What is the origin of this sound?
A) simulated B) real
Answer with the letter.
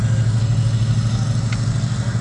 B